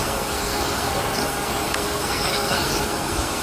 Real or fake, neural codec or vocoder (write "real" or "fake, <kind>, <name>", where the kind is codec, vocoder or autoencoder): fake, codec, SNAC